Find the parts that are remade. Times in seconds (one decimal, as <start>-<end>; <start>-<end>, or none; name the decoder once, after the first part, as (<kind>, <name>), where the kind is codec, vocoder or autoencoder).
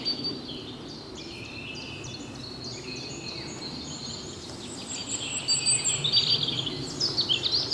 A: none